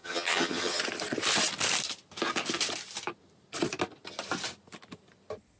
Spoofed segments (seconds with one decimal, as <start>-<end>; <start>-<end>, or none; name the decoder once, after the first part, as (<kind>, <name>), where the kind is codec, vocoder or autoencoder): 0.0-0.8 (vocoder, HiFi-GAN)